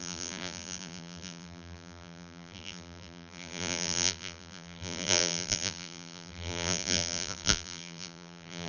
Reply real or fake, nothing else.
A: fake